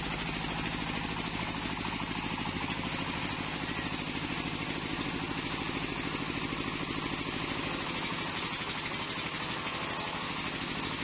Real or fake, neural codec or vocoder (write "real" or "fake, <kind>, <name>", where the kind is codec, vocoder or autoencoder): real